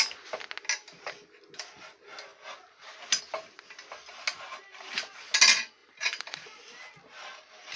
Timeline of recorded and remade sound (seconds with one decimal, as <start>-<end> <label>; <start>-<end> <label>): 0.0-5.8 recorded; 5.8-6.4 remade; 6.4-7.8 recorded